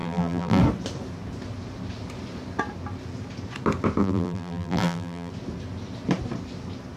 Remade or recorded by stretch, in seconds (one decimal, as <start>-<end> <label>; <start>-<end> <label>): 0.0-0.6 remade; 0.6-4.0 recorded; 4.0-5.3 remade; 5.3-7.0 recorded